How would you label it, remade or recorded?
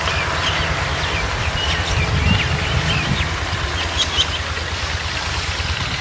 recorded